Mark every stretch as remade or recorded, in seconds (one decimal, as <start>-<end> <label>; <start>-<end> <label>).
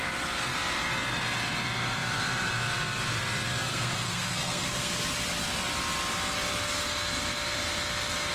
0.0-3.7 recorded; 3.7-4.9 remade; 4.9-8.3 recorded